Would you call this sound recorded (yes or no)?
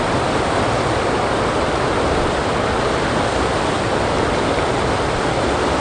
yes